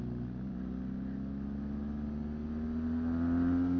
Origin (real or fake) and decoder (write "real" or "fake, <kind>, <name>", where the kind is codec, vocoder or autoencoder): real